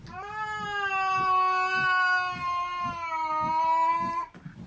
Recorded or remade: recorded